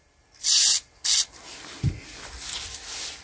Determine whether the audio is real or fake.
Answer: real